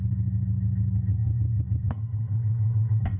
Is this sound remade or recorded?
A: recorded